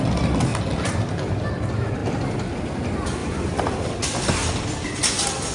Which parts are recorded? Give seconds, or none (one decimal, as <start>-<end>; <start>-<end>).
0.0-0.5; 1.5-3.2; 3.8-4.4; 5.0-5.5